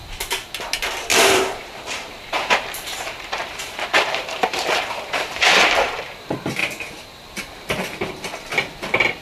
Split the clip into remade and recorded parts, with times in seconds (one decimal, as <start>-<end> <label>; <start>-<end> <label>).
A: 0.0-1.1 recorded; 1.1-6.0 remade; 6.0-6.6 recorded; 6.6-7.4 remade; 7.4-9.2 recorded